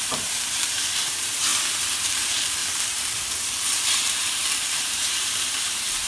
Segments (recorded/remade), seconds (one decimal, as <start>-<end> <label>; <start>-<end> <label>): 0.0-1.5 remade; 1.5-2.0 recorded; 2.0-2.6 remade; 2.6-4.0 recorded; 4.0-6.1 remade